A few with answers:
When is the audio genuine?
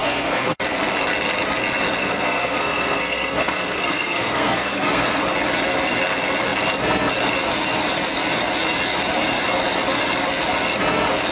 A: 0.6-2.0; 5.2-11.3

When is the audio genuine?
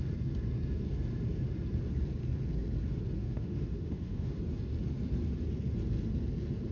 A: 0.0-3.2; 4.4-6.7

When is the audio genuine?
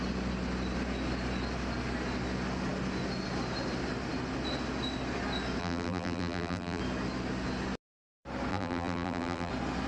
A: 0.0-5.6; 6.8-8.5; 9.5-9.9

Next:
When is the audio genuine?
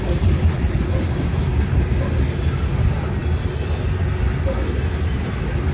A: 0.0-5.7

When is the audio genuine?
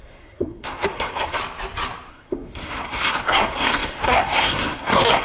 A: 1.4-2.1